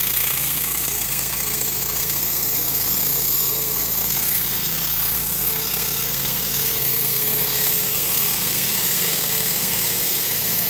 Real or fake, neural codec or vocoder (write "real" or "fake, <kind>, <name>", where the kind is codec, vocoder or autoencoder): fake, codec, SNAC